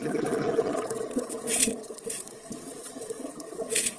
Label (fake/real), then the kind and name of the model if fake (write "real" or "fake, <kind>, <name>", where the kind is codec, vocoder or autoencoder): fake, vocoder, Vocos